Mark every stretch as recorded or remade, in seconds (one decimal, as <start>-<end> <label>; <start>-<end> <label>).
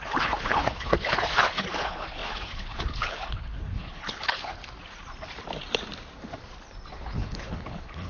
0.0-4.6 remade; 4.6-6.9 recorded; 6.9-8.1 remade